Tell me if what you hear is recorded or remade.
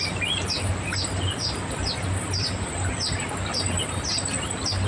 recorded